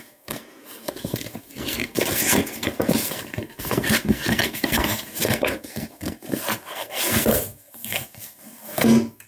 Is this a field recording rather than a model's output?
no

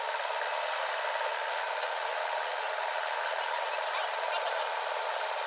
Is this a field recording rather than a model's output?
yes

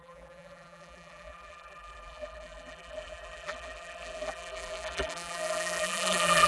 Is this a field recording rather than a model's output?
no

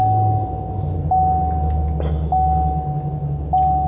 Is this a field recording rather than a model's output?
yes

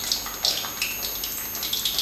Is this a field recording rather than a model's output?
yes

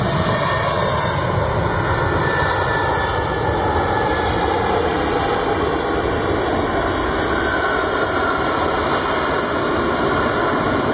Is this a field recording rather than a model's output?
yes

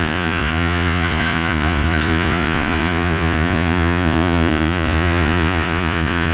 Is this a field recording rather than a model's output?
no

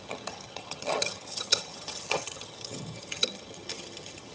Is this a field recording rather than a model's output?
no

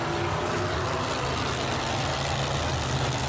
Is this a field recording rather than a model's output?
yes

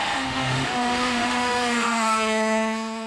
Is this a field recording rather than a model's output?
no